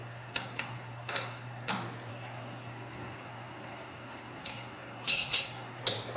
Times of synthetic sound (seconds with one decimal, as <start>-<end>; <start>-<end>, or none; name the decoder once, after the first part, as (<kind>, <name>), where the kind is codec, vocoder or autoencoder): 0.0-1.7 (codec, SNAC); 2.1-5.8